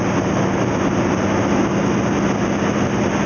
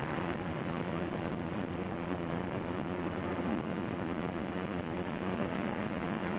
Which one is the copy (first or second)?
second